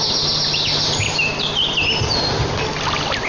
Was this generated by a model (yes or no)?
no